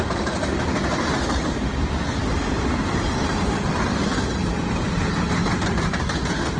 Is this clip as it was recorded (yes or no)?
no